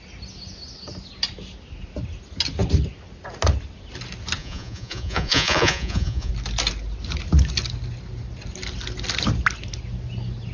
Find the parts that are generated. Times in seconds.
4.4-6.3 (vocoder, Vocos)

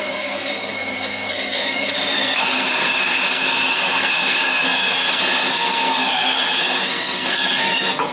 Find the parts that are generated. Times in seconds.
0.0-8.1 (codec, SNAC)

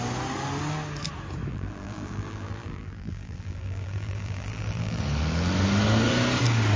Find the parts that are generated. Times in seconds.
1.5-5.0 (vocoder, BigVGAN v2)

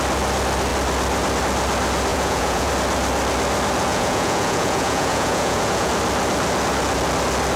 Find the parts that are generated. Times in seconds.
2.1-2.7 (vocoder, Vocos); 3.9-5.9

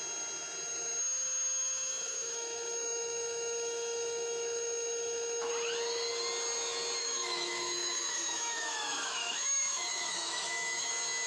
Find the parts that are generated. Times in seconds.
1.0-5.5 (autoencoder, DAC-VAE); 7.0-10.9

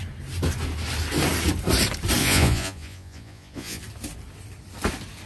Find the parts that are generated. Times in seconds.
2.2-3.8 (vocoder, Vocos)

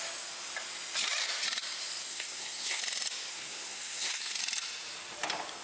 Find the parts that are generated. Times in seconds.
2.1-2.8 (codec, SNAC); 3.3-4.4